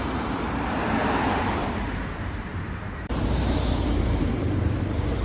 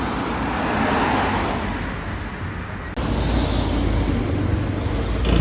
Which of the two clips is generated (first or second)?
first